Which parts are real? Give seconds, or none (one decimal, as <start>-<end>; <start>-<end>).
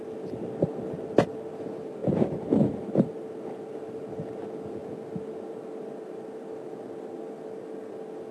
2.0-2.9; 4.8-5.8